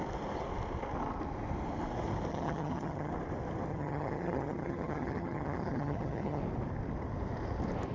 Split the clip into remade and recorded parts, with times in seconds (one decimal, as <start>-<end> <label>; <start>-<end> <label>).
0.0-2.3 recorded; 2.3-3.1 remade; 3.1-3.7 recorded; 3.7-6.4 remade; 6.4-7.9 recorded